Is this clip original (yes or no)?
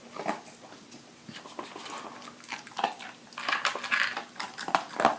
yes